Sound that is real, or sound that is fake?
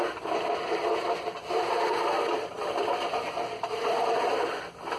real